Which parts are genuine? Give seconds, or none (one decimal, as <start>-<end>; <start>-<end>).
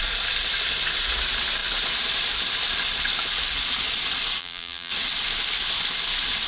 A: 0.0-4.4; 4.9-6.5